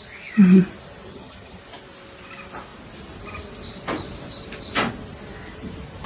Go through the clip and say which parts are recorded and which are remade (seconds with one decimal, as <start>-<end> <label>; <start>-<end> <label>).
0.0-1.1 recorded; 1.1-1.6 remade; 1.6-6.1 recorded